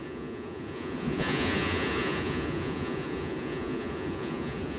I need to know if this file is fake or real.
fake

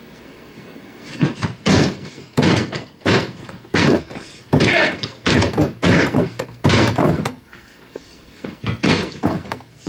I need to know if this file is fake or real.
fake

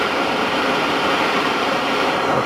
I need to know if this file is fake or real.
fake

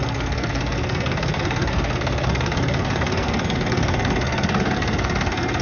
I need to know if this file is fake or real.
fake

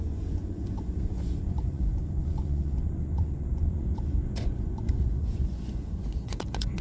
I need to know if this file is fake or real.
fake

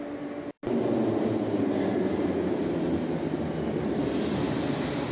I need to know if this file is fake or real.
real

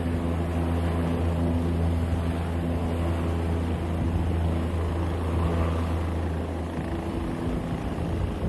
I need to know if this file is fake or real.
real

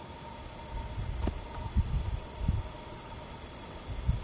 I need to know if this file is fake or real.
real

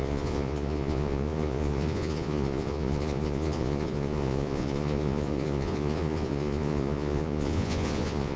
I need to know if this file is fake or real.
fake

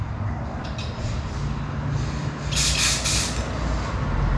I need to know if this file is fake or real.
real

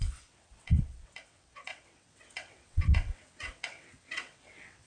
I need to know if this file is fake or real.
fake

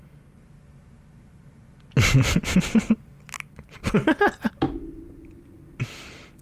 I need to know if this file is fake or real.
real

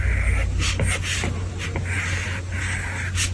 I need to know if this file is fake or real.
real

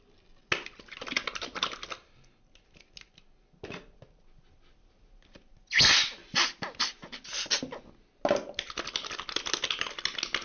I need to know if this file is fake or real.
real